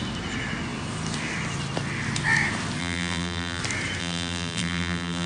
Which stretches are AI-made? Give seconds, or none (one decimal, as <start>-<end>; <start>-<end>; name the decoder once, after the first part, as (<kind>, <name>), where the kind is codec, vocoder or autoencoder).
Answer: 2.8-3.6 (vocoder, BigVGAN v2); 4.0-5.3

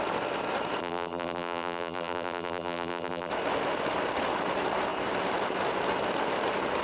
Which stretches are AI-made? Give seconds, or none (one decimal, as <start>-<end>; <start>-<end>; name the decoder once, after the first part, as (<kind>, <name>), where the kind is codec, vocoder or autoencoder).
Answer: 0.8-3.3 (vocoder, BigVGAN v2)